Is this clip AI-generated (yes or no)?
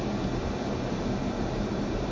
no